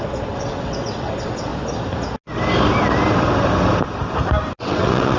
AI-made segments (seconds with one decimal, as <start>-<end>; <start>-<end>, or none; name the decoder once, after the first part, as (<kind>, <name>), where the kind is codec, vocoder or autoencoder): 0.0-1.5 (vocoder, WaveNeXt); 4.6-5.2